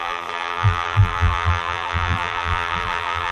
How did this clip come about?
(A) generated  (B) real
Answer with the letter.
A